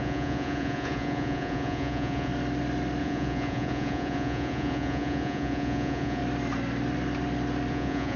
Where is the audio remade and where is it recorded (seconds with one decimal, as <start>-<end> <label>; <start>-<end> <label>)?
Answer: 0.0-2.3 remade; 2.3-3.0 recorded; 3.0-6.2 remade; 6.2-7.7 recorded; 7.7-8.2 remade